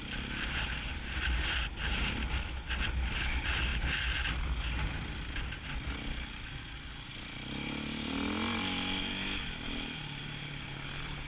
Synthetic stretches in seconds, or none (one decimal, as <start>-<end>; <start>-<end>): none